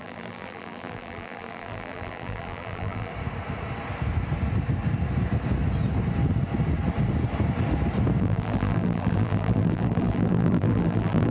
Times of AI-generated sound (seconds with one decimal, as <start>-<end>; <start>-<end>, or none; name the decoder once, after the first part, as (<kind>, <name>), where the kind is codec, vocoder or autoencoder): 0.0-3.1 (vocoder, BigVGAN v2); 8.2-11.3